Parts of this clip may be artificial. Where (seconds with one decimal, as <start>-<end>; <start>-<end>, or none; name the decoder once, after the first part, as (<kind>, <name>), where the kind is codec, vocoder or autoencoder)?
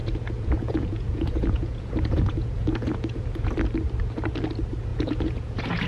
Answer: 0.0-3.5 (vocoder, Vocos); 4.9-5.9